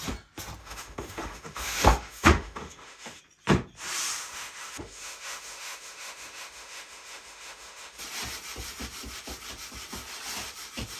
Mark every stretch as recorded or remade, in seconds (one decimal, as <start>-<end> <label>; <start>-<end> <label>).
0.0-0.6 recorded; 0.6-3.2 remade; 3.2-4.2 recorded; 4.2-8.0 remade; 8.0-11.0 recorded